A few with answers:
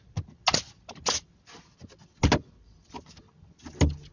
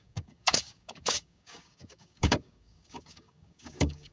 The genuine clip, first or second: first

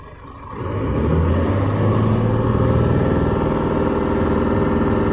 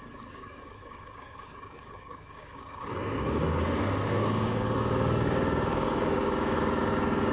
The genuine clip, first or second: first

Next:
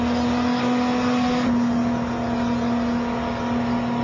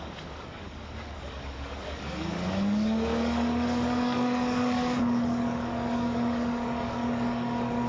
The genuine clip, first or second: first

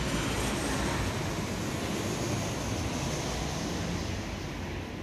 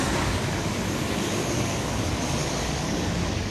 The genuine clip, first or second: first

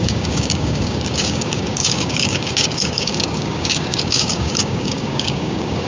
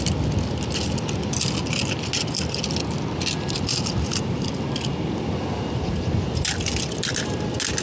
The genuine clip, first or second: second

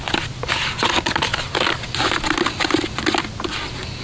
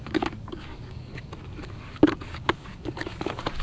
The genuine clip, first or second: first